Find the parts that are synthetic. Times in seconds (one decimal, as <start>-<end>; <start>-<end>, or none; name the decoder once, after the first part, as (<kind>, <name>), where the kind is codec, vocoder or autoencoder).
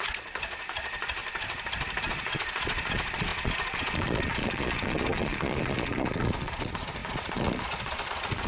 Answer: 0.0-1.2 (vocoder, Vocos); 2.1-8.5